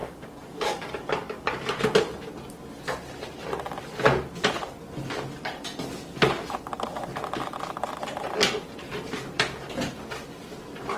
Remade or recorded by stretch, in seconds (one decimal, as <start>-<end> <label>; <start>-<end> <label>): 0.0-1.7 remade; 1.7-11.0 recorded